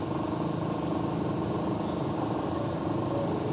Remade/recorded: recorded